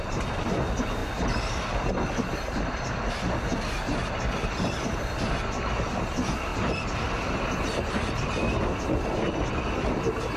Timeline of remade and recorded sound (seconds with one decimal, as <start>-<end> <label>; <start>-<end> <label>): 0.0-10.4 recorded